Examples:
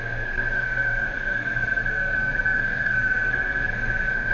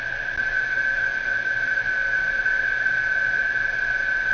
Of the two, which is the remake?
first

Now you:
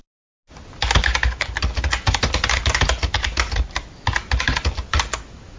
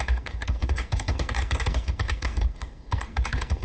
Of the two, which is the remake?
second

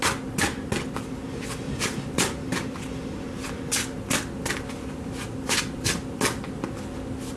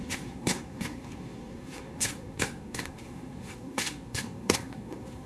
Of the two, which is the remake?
second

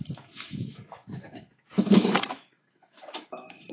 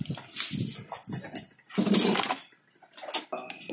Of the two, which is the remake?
first